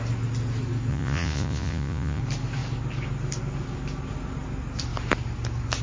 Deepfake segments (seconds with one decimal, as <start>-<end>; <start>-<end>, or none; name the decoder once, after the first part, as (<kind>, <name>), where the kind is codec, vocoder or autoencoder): 0.9-2.2 (vocoder, Vocos)